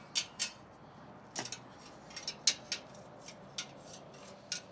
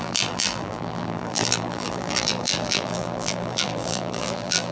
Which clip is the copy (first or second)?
second